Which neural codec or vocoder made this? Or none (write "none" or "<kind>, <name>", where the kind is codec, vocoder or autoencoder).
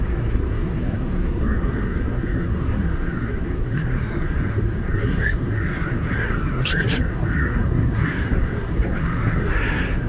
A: codec, SNAC